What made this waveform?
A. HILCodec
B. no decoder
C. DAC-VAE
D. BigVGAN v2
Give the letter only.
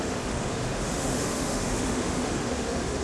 C